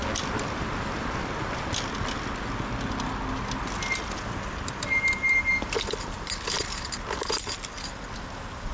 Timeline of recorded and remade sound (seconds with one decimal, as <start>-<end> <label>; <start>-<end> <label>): 0.0-8.7 recorded